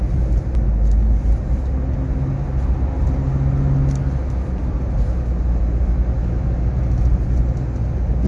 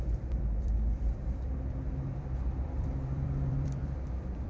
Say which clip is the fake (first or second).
second